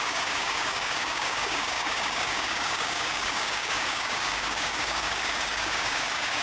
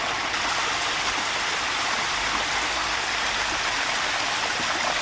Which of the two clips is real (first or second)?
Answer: second